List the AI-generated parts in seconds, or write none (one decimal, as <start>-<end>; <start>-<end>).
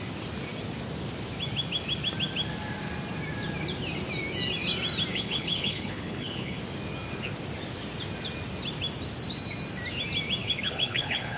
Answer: 5.1-6.6; 10.4-11.4